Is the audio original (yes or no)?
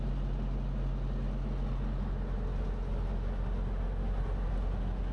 yes